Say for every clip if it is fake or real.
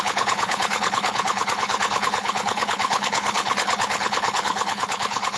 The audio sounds fake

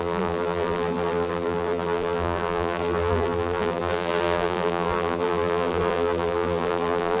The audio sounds fake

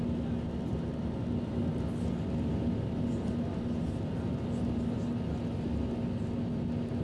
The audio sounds real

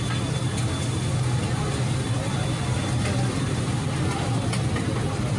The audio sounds real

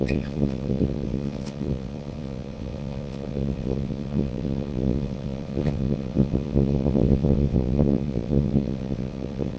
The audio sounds fake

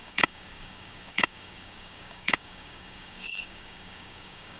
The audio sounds fake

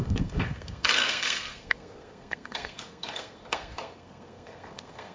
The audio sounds fake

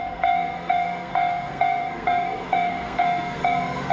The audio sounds fake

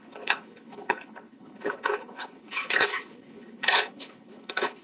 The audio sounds fake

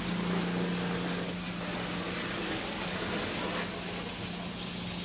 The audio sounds real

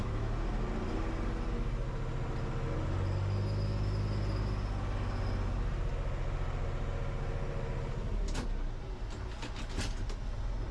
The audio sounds real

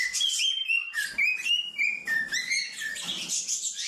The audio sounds real